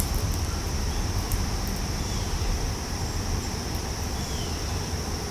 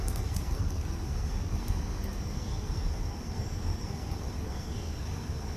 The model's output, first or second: second